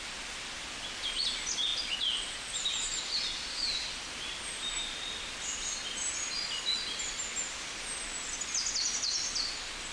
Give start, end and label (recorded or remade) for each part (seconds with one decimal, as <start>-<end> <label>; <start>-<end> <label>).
0.0-9.9 recorded